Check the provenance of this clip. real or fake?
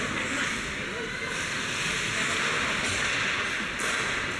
real